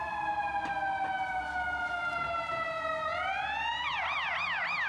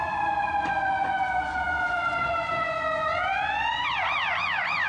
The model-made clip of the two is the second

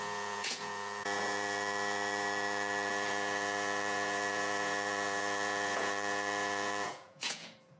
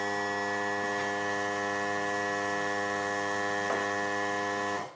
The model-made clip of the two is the first